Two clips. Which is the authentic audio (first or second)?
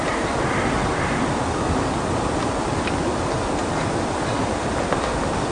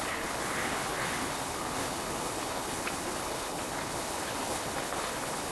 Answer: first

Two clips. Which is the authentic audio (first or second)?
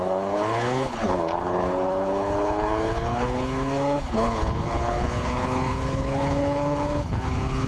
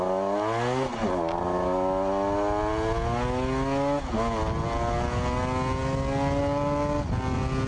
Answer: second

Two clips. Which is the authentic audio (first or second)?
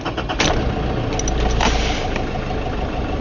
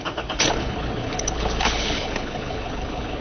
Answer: first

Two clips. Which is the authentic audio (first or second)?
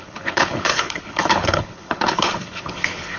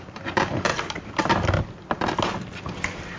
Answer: second